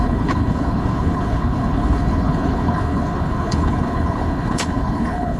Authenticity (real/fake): fake